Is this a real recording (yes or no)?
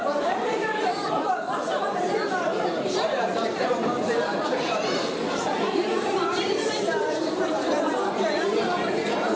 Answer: no